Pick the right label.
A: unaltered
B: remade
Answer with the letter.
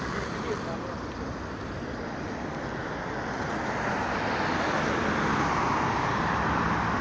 A